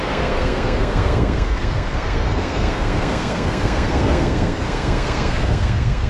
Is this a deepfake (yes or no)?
yes